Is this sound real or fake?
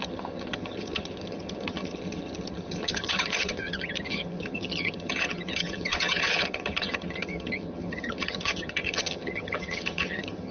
fake